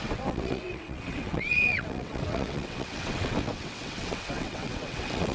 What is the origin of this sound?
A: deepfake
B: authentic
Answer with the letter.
A